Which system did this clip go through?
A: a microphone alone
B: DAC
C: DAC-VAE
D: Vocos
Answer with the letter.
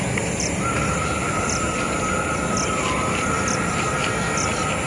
A